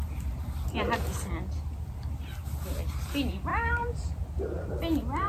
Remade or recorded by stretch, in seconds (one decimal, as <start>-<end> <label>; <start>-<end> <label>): 0.0-3.5 recorded; 3.5-4.7 remade; 4.7-5.3 recorded